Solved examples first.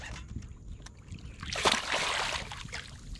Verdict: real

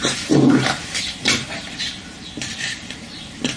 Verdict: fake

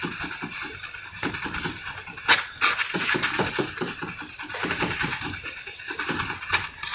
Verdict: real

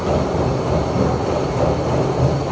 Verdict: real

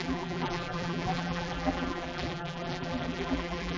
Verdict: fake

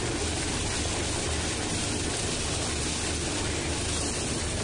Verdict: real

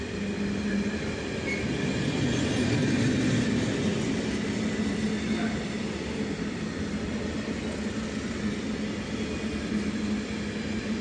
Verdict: real